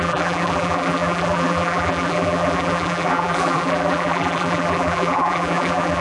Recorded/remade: remade